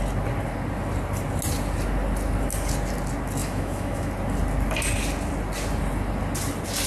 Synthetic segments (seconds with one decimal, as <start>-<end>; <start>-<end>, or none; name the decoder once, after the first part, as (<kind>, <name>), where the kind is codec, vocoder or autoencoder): 3.4-4.1 (autoencoder, DAC-VAE)